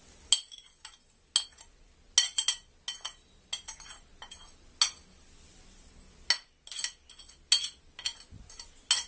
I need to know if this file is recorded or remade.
recorded